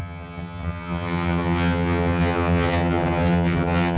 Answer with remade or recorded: remade